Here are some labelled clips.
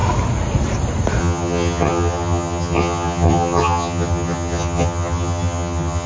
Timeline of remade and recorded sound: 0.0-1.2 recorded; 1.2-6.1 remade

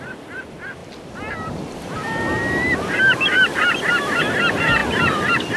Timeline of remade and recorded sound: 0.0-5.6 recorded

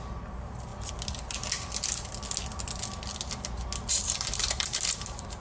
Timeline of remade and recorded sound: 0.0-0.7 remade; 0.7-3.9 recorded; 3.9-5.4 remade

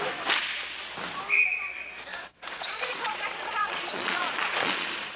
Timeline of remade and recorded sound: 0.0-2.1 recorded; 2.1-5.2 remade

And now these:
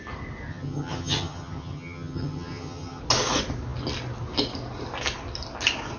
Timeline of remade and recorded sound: 0.0-0.5 recorded; 0.5-3.0 remade; 3.0-6.0 recorded